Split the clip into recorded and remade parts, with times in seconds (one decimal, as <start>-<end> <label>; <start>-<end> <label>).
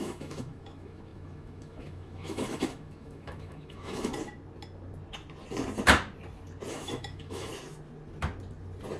0.0-4.1 remade; 4.1-6.7 recorded; 6.7-7.5 remade; 7.5-9.0 recorded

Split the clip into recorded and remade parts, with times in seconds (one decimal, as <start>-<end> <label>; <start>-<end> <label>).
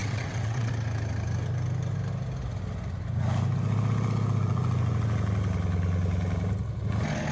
0.0-0.7 remade; 0.7-7.3 recorded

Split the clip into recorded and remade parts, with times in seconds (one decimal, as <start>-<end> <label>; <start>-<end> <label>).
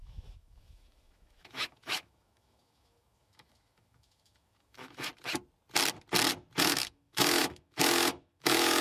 0.0-5.1 remade; 5.1-6.6 recorded; 6.6-8.8 remade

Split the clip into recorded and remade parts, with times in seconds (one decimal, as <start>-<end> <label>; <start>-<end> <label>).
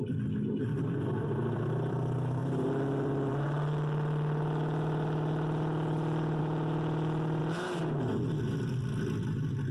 0.0-7.4 remade; 7.4-8.5 recorded; 8.5-9.7 remade